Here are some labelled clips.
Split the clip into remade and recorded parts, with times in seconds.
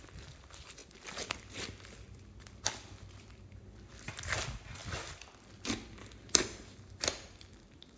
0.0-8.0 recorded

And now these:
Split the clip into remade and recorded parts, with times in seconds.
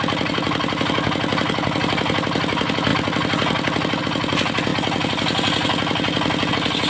0.0-6.9 recorded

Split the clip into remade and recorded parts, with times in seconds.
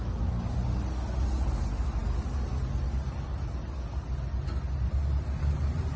0.0-6.0 recorded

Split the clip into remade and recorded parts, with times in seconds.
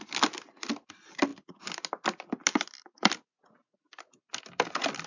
0.0-5.1 recorded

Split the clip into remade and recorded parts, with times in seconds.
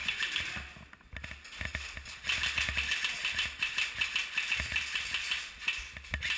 0.0-4.2 recorded; 4.2-5.3 remade; 5.3-6.4 recorded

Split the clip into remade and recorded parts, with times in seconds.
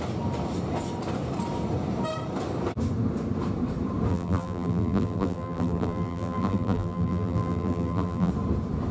0.0-4.1 recorded; 4.1-8.3 remade; 8.3-8.9 recorded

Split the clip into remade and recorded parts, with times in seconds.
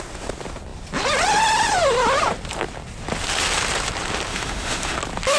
0.0-4.3 recorded; 4.3-5.0 remade; 5.0-5.4 recorded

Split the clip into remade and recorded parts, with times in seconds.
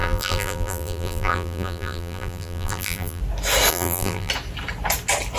0.0-3.2 remade; 3.2-3.7 recorded; 3.7-4.3 remade; 4.3-5.4 recorded